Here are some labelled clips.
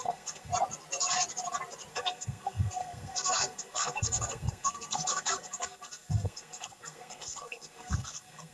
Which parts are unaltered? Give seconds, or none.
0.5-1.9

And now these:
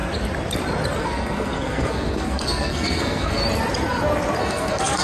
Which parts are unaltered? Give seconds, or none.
0.0-1.0; 3.4-4.4